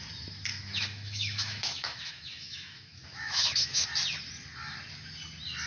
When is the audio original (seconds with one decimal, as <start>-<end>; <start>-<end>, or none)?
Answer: 0.0-0.5; 3.9-5.7